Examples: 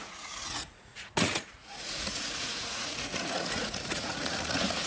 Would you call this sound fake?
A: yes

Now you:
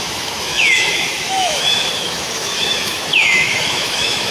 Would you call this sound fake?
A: yes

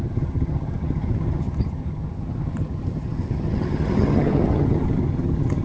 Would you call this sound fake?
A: yes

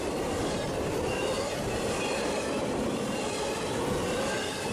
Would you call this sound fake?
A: yes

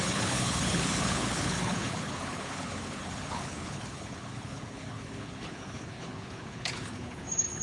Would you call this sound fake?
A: yes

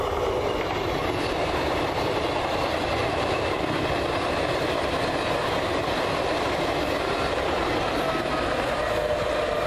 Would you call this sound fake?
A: no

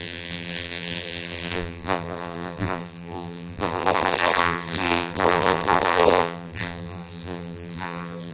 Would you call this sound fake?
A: yes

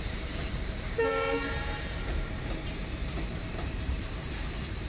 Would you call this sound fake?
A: yes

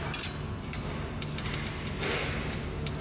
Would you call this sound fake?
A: no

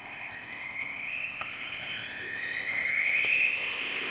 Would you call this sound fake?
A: yes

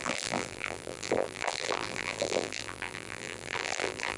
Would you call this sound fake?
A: yes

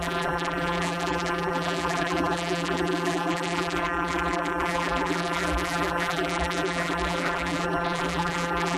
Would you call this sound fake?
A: yes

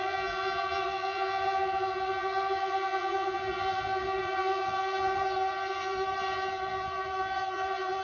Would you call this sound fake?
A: yes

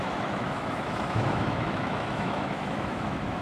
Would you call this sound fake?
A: yes